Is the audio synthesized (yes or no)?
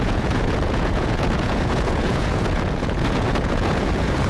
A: yes